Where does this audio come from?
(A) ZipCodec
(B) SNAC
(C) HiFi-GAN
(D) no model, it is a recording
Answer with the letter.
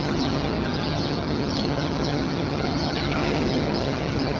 C